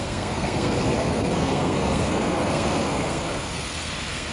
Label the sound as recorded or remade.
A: remade